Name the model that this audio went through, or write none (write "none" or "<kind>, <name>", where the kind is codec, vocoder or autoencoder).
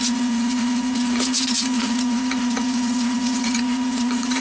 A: vocoder, Vocos